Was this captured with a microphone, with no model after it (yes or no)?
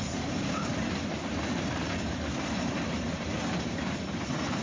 no